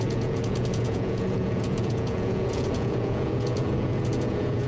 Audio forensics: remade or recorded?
remade